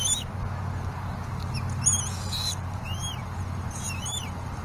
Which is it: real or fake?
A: real